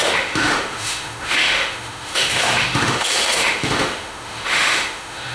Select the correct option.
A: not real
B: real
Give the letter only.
A